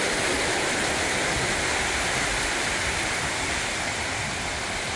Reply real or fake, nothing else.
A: real